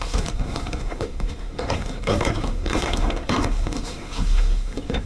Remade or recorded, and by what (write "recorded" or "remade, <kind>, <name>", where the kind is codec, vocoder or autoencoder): remade, codec, SNAC